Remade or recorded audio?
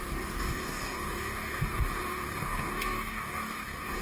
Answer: remade